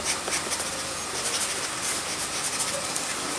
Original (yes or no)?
yes